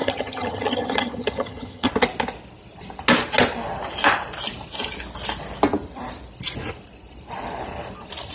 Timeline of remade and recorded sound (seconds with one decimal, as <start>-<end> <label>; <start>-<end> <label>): 0.0-1.9 remade; 1.9-8.3 recorded